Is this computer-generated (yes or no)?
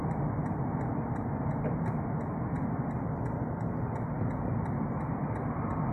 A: no